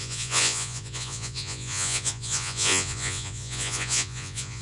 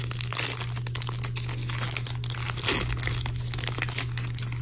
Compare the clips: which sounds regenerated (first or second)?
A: first